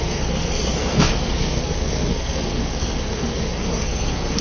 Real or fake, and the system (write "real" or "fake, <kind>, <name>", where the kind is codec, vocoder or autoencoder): fake, codec, SNAC